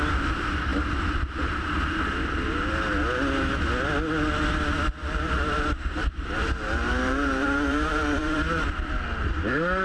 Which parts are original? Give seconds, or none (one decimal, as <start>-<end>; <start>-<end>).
0.0-5.0; 8.4-9.8